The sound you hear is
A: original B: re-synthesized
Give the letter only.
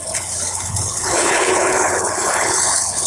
B